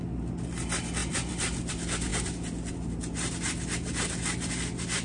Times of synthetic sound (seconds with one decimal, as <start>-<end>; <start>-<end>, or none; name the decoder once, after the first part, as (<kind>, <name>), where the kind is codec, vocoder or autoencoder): 1.0-1.7 (vocoder, BigVGAN v2)